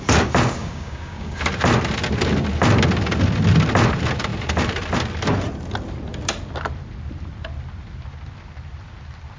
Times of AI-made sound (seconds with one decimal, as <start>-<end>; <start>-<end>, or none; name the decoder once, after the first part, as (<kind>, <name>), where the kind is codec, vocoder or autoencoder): 0.6-1.4 (codec, DAC)

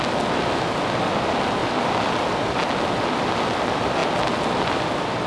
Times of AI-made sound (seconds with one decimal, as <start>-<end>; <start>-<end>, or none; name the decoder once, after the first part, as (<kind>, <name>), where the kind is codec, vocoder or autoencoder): none

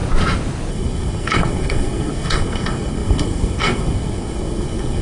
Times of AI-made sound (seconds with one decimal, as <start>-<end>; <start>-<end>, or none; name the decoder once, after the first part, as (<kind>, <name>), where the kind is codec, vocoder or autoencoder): 0.7-5.0 (codec, SNAC)